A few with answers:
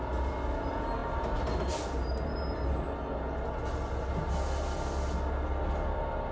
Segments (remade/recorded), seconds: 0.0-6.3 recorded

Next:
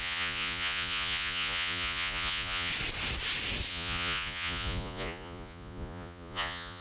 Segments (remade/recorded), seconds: 0.0-2.7 remade; 2.7-3.7 recorded; 3.7-6.8 remade

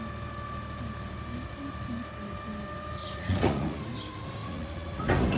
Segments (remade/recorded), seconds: 0.0-3.0 recorded; 3.0-3.8 remade; 3.8-4.4 recorded; 4.4-5.4 remade